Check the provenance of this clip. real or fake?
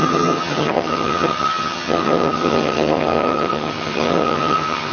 fake